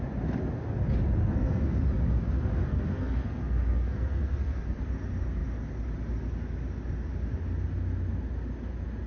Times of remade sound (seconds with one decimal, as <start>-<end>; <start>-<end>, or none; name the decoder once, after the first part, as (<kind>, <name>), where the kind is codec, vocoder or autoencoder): 1.2-1.8 (codec, SNAC); 2.7-4.8